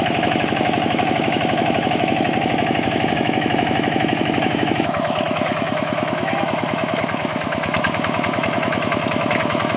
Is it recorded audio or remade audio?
remade